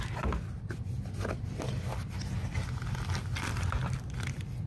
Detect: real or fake real